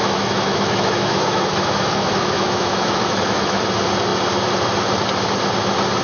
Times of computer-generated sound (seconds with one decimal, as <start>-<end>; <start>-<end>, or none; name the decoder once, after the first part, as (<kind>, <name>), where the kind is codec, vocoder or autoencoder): 0.0-3.6 (autoencoder, DAC-VAE)